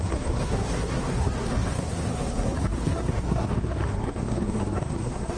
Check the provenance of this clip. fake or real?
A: fake